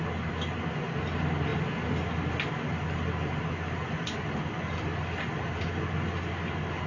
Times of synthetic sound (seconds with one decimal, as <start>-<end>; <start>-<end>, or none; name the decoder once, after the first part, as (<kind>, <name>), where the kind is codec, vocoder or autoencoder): none

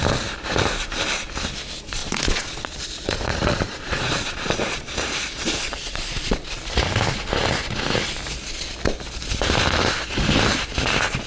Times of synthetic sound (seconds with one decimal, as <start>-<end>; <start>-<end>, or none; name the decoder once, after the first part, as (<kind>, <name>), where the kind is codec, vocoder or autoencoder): 2.0-6.6 (vocoder, Vocos)

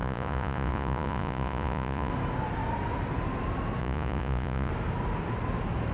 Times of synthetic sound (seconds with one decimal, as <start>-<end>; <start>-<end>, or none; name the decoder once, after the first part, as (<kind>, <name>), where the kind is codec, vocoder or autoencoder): 0.0-2.1 (vocoder, Vocos); 3.8-4.7

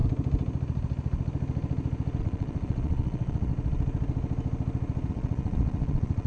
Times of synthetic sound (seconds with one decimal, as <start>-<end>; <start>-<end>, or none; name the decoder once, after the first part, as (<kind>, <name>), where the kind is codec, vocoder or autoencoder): 2.2-3.5 (vocoder, Vocos); 5.1-6.3

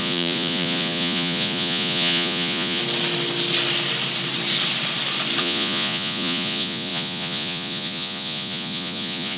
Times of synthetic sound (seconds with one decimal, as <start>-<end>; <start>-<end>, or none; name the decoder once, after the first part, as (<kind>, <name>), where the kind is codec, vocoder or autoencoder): 0.0-2.8 (vocoder, Vocos); 5.4-9.4

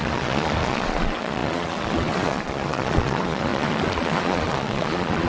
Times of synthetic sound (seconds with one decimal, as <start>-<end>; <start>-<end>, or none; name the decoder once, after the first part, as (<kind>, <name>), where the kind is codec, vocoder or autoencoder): 0.0-5.3 (vocoder, Vocos)